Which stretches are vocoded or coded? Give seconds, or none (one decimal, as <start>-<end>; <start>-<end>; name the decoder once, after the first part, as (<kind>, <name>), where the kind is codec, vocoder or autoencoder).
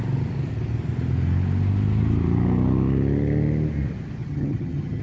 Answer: 4.2-5.0 (vocoder, HiFi-GAN)